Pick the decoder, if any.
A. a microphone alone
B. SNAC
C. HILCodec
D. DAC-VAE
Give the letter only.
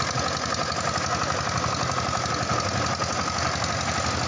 A